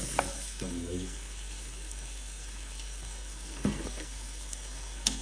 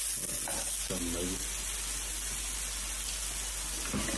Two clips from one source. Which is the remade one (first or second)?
first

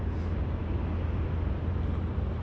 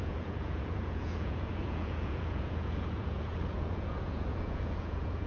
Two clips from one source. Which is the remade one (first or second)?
second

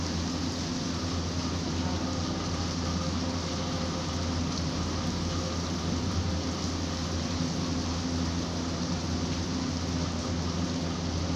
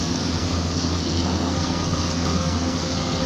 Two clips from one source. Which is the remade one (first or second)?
second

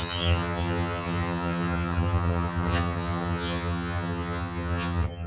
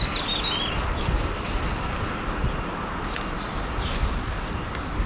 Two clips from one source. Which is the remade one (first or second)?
first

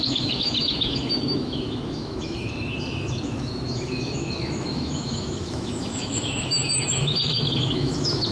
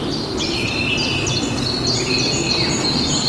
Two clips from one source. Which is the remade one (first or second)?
first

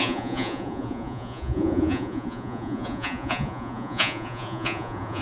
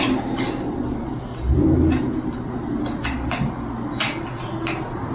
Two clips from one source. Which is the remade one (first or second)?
first